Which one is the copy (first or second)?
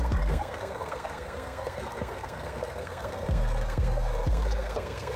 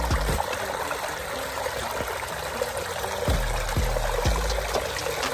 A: first